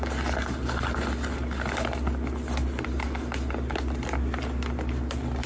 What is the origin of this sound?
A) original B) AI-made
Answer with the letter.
A